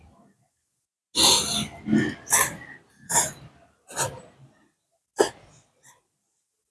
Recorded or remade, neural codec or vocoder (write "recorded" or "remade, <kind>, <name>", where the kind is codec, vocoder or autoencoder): recorded